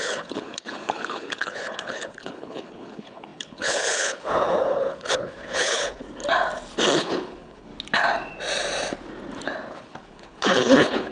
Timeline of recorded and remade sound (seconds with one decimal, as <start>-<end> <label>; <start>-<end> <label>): 0.0-6.0 remade; 6.0-7.0 recorded; 7.0-7.7 remade; 7.7-9.7 recorded; 9.7-11.1 remade